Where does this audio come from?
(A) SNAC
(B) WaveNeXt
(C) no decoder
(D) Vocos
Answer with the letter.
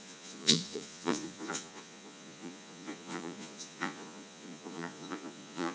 D